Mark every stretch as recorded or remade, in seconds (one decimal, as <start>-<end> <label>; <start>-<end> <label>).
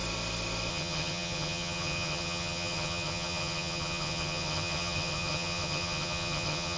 0.0-0.7 recorded; 0.7-6.8 remade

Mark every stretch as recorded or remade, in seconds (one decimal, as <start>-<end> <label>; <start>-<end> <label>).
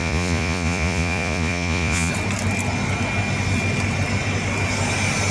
0.0-2.1 remade; 2.1-5.3 recorded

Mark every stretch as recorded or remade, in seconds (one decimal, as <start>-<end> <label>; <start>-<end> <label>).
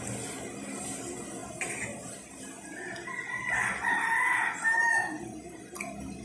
0.0-6.2 recorded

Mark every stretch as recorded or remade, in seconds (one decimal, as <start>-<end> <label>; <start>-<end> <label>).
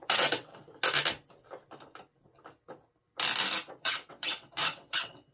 0.0-0.5 remade; 0.5-3.7 recorded; 3.7-5.3 remade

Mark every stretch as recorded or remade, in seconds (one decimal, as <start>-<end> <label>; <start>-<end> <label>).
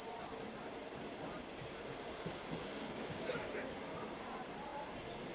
0.0-2.6 recorded; 2.6-3.7 remade; 3.7-5.3 recorded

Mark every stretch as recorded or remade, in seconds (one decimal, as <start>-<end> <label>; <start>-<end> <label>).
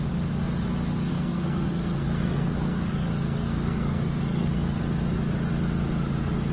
0.0-1.1 recorded; 1.1-4.8 remade; 4.8-6.5 recorded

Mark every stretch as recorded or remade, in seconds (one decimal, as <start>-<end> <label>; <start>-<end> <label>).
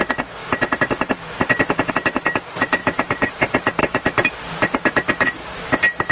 0.0-2.8 recorded; 2.8-3.3 remade; 3.3-6.1 recorded